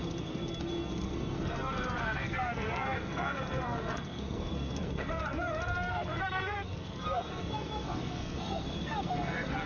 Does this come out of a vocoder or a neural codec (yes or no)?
yes